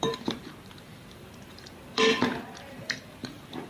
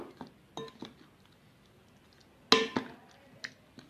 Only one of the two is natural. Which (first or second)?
second